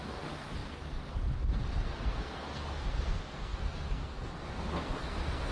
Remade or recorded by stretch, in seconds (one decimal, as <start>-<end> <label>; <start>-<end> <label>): 0.0-5.5 remade